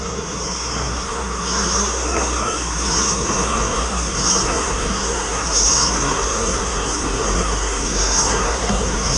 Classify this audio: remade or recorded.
remade